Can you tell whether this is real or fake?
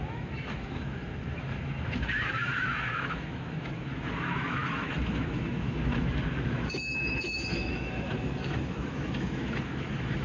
fake